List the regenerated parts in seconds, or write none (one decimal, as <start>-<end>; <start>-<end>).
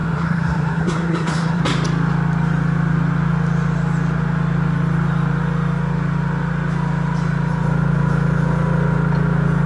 0.0-1.6